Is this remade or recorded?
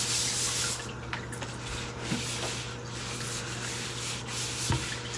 recorded